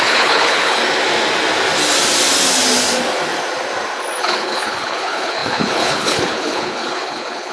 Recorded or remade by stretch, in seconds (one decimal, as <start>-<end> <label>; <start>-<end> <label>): 0.0-0.8 remade; 0.8-4.2 recorded; 4.2-7.5 remade